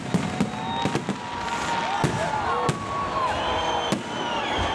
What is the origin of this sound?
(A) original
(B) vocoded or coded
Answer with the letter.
A